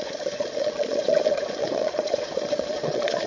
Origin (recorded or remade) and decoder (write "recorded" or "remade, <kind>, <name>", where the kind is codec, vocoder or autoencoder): remade, vocoder, Vocos